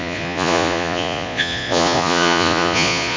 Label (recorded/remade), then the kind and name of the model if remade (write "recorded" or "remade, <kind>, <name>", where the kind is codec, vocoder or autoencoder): remade, vocoder, Vocos